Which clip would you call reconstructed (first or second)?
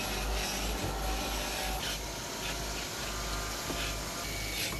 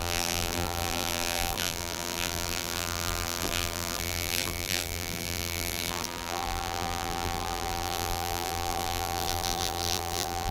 second